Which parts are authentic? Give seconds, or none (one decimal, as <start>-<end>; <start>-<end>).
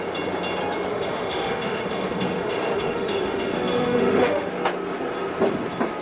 0.0-0.9; 4.5-6.0